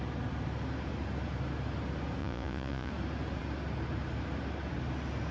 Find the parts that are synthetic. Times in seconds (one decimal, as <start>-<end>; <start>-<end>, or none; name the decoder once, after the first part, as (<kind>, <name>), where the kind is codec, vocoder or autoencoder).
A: 2.2-2.9 (vocoder, Vocos)